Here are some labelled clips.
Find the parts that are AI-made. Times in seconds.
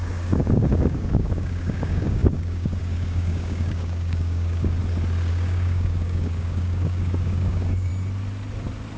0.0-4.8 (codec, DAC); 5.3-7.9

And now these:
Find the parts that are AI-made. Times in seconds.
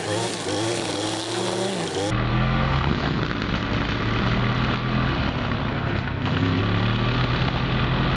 2.3-3.2 (codec, SNAC); 5.7-6.6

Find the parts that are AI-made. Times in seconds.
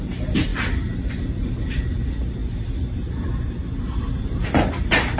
none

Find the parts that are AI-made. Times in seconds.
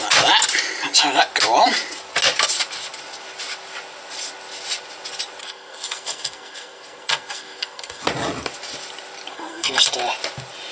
5.4-8.0 (codec, SNAC); 9.3-9.9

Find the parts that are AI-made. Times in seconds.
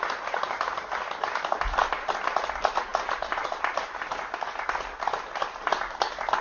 none